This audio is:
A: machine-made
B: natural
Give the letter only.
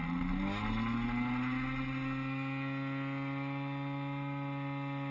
B